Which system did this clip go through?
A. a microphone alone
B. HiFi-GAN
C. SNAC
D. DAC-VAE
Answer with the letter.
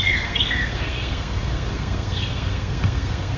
C